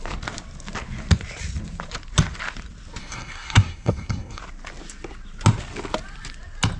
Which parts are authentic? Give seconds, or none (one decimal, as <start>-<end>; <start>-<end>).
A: 0.0-3.0; 4.4-6.8